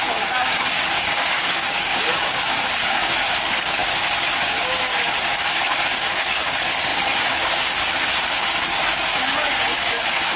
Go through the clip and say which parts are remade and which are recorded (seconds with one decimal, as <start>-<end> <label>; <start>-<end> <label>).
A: 0.0-10.4 remade